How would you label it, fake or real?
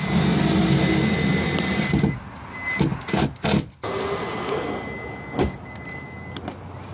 real